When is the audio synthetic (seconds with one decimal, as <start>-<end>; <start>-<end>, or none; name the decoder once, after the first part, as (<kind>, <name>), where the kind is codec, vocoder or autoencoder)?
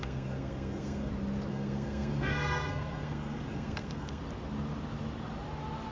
0.0-1.1 (codec, SNAC); 1.5-4.2